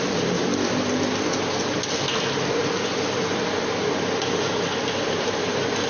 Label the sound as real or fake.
real